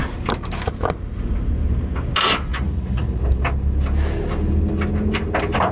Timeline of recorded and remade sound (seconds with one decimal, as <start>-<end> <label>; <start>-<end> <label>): 0.0-2.5 recorded; 2.5-3.2 remade; 3.2-5.7 recorded